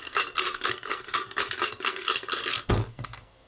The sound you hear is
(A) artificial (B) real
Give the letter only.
A